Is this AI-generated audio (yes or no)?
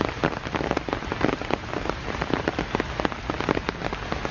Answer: no